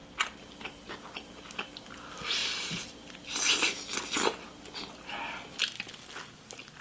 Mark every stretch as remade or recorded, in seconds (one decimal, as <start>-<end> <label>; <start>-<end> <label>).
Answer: 0.0-6.8 recorded